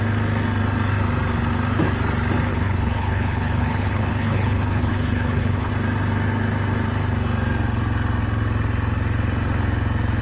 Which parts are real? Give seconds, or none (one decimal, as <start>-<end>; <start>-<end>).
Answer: 0.0-2.5; 5.7-10.2